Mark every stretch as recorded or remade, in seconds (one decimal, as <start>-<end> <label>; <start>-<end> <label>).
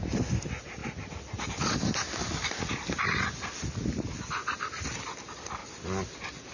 0.0-6.5 recorded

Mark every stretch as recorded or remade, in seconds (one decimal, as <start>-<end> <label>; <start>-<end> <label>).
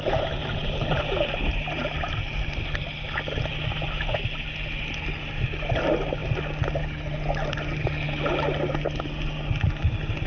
0.0-10.3 recorded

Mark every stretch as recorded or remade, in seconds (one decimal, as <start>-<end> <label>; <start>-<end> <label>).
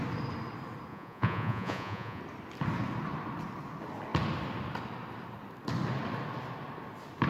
0.0-0.9 recorded; 0.9-2.2 remade; 2.2-7.3 recorded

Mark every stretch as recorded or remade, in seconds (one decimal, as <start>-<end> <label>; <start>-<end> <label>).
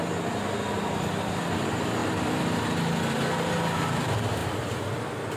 0.0-2.0 recorded; 2.0-2.6 remade; 2.6-5.4 recorded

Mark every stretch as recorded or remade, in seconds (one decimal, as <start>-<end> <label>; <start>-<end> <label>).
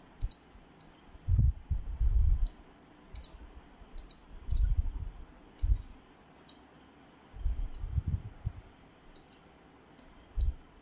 0.0-10.8 recorded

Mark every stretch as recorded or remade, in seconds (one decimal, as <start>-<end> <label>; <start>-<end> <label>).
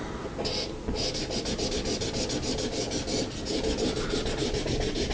0.0-5.1 recorded